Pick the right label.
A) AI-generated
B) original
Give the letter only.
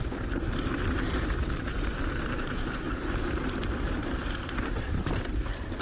A